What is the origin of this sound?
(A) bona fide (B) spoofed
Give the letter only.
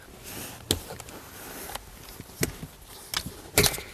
A